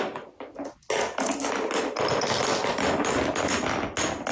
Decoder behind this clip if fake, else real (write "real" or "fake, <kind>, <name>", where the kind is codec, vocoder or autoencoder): real